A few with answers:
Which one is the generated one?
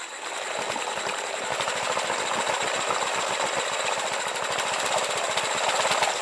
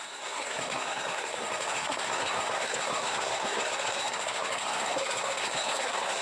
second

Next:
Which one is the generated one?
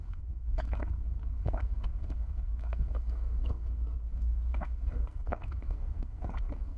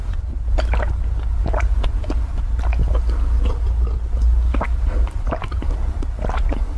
first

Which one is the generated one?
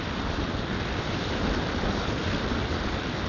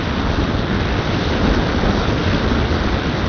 first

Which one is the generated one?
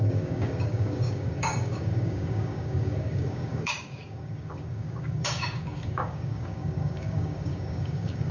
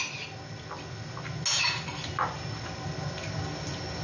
first